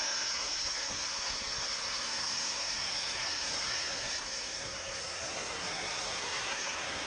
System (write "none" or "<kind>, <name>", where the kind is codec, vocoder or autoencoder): codec, SNAC